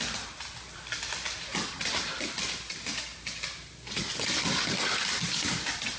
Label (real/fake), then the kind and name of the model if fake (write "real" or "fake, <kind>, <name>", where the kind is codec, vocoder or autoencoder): real